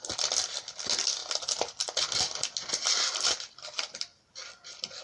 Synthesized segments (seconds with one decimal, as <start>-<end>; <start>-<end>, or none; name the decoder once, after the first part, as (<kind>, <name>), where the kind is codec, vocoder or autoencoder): none